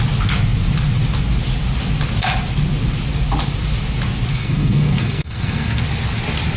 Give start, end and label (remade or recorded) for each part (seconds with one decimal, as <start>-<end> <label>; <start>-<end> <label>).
0.0-4.3 recorded; 4.3-5.8 remade; 5.8-6.6 recorded